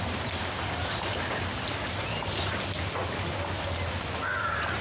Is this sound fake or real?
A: real